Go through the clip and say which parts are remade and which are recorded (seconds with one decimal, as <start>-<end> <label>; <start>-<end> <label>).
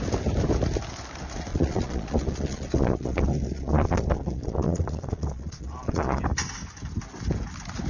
0.0-1.5 recorded; 1.5-6.2 remade; 6.2-7.9 recorded